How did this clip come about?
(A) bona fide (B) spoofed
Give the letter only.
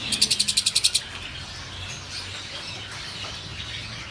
A